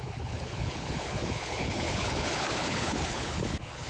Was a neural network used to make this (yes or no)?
yes